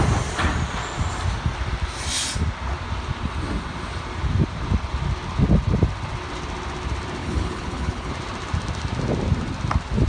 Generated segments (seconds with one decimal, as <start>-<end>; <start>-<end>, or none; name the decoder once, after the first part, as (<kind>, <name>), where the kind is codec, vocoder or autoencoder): 7.2-8.1 (codec, HILCodec)